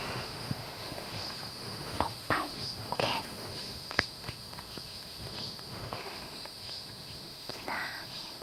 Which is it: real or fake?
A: fake